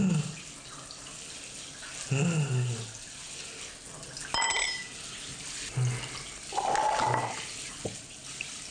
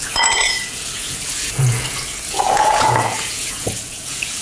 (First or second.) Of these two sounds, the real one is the first